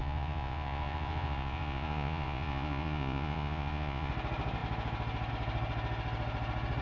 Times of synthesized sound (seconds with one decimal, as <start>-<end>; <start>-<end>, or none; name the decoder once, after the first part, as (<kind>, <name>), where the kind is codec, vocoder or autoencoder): 0.0-4.1 (vocoder, Vocos)